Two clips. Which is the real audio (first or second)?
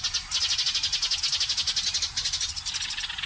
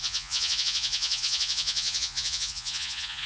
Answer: first